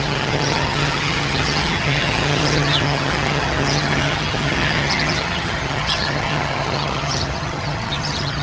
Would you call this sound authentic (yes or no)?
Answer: no